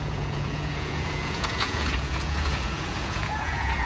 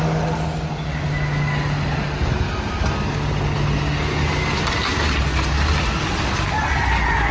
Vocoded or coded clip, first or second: first